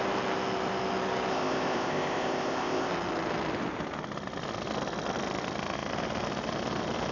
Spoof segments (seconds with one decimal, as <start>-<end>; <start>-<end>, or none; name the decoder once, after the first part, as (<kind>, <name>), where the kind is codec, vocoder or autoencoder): 1.3-2.9 (codec, ZipCodec)